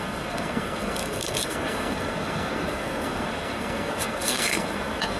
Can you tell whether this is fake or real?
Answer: fake